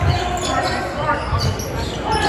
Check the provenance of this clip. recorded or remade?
recorded